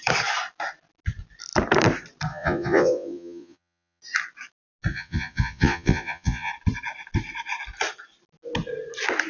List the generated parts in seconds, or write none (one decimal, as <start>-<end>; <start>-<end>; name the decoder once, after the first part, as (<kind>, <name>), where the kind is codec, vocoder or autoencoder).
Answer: 2.3-4.0 (vocoder, Vocos); 4.9-6.5

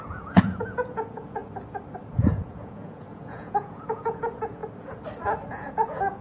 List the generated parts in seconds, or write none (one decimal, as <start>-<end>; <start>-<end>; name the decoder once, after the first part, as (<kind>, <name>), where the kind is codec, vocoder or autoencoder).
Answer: 0.0-1.4 (vocoder, Vocos); 2.1-4.6; 5.5-6.2

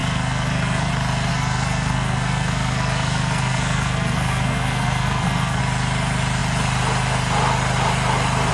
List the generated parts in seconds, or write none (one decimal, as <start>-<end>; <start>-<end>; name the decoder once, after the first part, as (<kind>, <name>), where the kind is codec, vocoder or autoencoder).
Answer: 0.0-0.9 (codec, SNAC); 1.3-5.6